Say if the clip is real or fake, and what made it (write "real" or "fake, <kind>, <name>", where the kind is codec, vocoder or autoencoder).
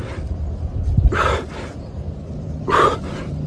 fake, vocoder, BigVGAN v2